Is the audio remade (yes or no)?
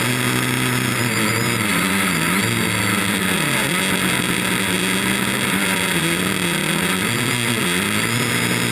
no